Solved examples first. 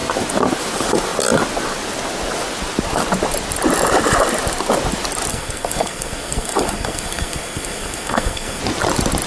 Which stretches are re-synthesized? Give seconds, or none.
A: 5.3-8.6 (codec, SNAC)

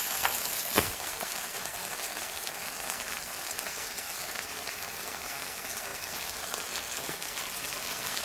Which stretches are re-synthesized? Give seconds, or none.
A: 0.0-8.2 (codec, SNAC)

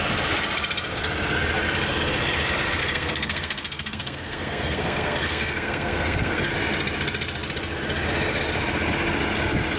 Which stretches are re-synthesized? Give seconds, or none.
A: 2.8-6.5 (codec, SNAC)

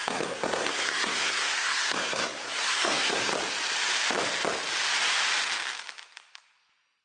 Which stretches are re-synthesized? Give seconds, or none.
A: 0.0-3.3 (codec, SNAC)

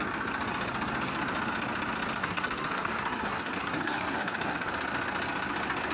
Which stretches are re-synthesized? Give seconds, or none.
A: 2.2-4.7 (codec, SNAC)